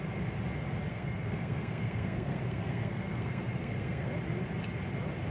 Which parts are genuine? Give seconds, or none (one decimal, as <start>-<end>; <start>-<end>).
0.0-0.9; 4.1-5.3